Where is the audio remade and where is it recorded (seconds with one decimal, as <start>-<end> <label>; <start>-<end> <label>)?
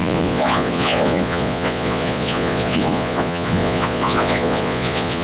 0.0-5.2 remade